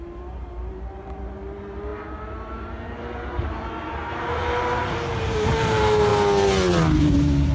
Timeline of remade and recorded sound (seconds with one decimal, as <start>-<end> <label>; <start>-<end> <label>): 0.0-6.1 remade; 6.1-7.0 recorded; 7.0-7.5 remade